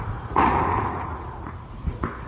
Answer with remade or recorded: remade